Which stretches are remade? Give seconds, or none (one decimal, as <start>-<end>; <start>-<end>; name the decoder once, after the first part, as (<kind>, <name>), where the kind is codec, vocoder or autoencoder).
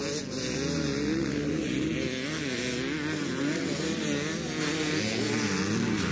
none